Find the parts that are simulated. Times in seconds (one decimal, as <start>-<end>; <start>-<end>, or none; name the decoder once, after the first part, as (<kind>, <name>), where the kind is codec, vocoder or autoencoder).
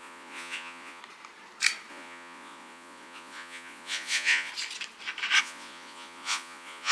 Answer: 0.0-1.0 (vocoder, Vocos); 1.9-4.5; 5.4-6.9